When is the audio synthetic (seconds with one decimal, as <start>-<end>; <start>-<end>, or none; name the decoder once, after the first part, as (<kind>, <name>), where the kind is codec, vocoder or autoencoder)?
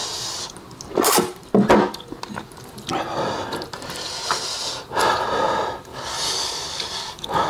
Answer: 5.9-7.5 (codec, DAC)